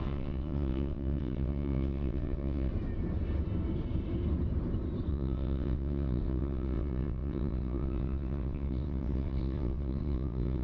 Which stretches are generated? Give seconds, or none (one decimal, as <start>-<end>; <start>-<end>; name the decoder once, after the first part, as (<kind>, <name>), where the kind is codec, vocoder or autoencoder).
0.0-2.7 (vocoder, WaveNeXt); 5.1-10.6